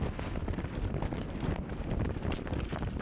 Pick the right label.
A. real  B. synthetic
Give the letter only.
A